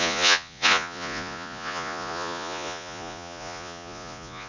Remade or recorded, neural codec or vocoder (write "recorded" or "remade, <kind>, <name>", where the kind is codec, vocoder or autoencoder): remade, vocoder, Vocos